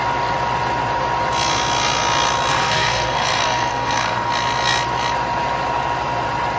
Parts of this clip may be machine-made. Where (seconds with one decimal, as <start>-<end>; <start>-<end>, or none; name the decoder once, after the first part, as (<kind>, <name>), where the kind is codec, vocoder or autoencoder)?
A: 2.5-4.3 (codec, SNAC)